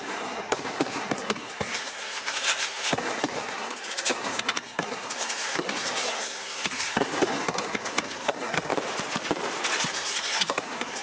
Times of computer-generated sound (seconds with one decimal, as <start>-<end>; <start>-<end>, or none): 0.0-8.7; 9.8-11.0